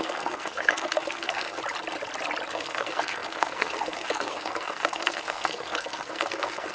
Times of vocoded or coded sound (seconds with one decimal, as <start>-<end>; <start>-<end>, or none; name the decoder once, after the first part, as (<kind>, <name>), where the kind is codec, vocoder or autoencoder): 0.0-1.6 (codec, SNAC); 2.5-6.7